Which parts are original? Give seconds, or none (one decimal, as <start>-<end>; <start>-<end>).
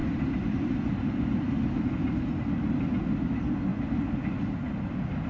0.0-5.3